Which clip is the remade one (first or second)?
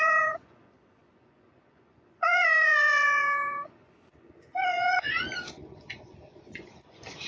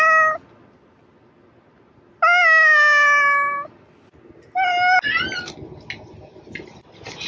first